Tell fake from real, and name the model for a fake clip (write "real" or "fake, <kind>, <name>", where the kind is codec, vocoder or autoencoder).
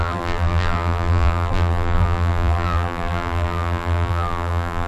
fake, vocoder, BigVGAN v2